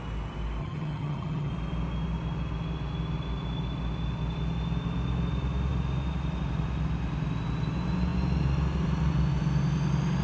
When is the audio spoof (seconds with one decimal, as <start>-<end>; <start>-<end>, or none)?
0.6-1.5